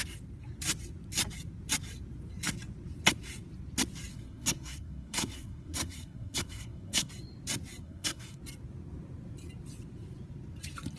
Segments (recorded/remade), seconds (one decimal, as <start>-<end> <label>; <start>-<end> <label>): 0.0-4.1 recorded; 4.1-7.1 remade; 7.1-7.8 recorded; 7.8-8.4 remade; 8.4-11.0 recorded